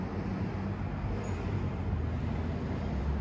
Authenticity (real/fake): real